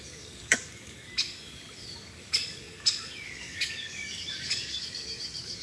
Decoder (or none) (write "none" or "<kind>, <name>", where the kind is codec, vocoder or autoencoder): codec, DAC